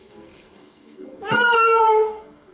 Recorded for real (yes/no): no